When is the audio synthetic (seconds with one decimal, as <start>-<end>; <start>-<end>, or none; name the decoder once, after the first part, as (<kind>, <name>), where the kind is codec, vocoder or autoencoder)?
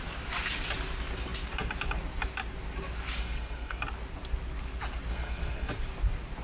3.2-3.8 (codec, SNAC); 5.1-5.7